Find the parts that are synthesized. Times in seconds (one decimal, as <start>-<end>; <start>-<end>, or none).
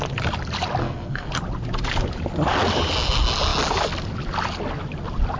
0.8-1.3